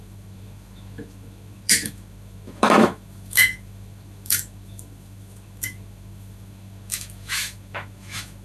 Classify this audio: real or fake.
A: fake